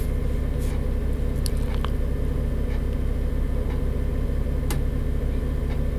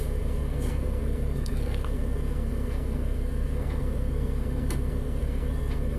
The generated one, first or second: second